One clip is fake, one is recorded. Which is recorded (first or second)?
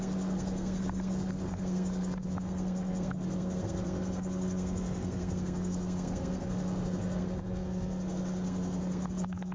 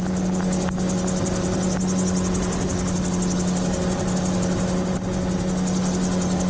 second